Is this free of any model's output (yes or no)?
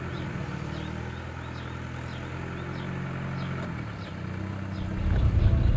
yes